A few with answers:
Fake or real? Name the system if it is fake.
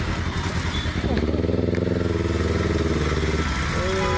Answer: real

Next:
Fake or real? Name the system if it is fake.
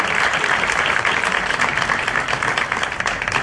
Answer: fake, vocoder, BigVGAN v2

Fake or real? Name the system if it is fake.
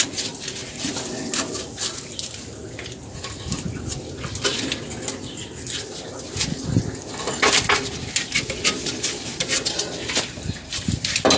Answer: real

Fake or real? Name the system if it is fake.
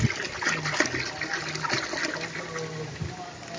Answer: real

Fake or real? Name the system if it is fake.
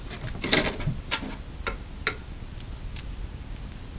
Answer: real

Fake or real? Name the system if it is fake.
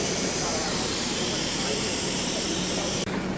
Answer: fake, vocoder, BigVGAN v2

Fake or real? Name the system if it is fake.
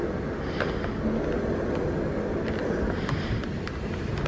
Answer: real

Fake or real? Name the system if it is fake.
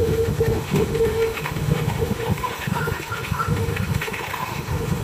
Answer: fake, autoencoder, DAC-VAE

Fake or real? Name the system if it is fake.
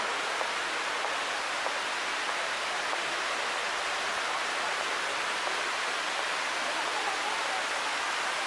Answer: real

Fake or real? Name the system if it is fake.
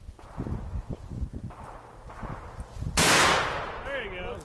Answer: real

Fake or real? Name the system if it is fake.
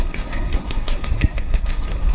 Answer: fake, codec, SNAC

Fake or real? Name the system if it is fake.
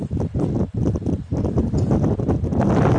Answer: real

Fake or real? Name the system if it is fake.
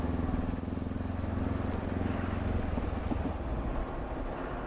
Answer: real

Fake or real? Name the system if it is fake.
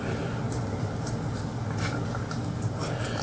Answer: real